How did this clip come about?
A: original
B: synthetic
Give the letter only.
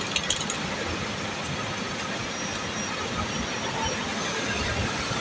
A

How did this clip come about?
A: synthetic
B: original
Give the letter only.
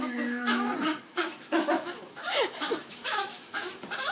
A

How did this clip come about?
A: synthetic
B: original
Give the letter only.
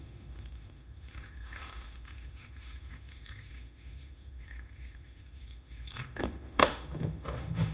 A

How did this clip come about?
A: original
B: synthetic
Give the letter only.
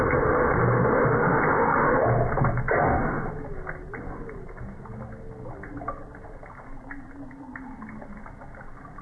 A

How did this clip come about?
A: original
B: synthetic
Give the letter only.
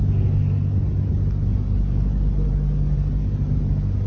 A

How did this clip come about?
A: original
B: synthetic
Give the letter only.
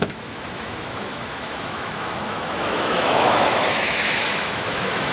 B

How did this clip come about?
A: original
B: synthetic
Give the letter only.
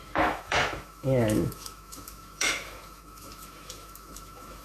B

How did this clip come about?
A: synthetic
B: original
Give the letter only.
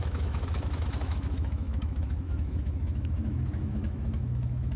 A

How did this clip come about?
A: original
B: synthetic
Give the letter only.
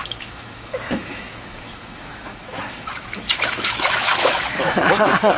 B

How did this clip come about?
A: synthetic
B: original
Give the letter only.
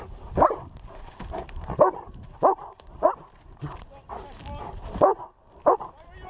B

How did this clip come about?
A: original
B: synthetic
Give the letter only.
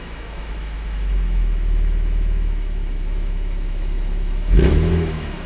B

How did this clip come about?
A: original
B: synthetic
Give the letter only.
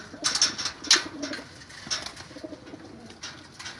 A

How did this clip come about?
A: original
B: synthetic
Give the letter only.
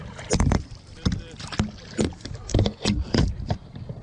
A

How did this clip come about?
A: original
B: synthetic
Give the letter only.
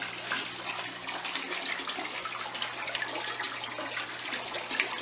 A